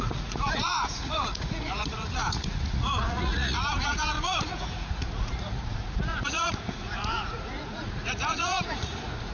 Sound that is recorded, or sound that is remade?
remade